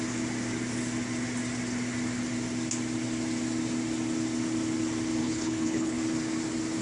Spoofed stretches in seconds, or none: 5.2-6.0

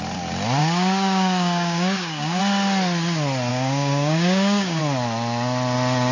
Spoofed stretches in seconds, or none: 0.6-2.4; 3.5-4.8